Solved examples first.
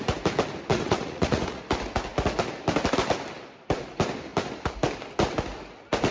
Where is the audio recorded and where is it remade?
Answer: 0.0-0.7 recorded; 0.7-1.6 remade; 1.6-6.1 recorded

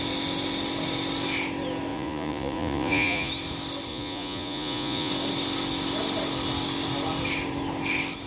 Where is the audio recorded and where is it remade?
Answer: 0.0-1.9 recorded; 1.9-3.3 remade; 3.3-3.9 recorded; 3.9-5.1 remade; 5.1-8.3 recorded

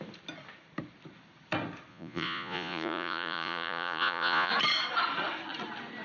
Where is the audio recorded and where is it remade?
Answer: 0.0-1.9 recorded; 1.9-4.5 remade; 4.5-6.0 recorded

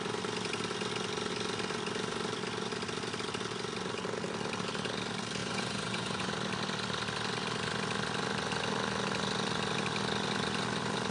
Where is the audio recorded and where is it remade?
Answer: 0.0-5.4 recorded; 5.4-6.3 remade; 6.3-11.1 recorded

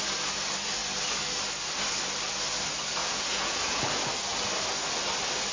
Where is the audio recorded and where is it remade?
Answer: 0.0-3.0 recorded; 3.0-3.8 remade; 3.8-5.5 recorded